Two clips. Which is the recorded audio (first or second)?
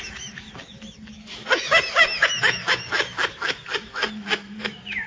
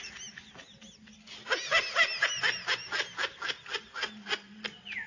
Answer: second